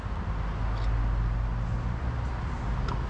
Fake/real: real